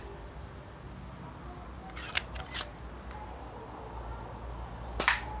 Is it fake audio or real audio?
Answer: real